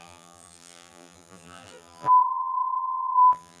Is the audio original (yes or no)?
no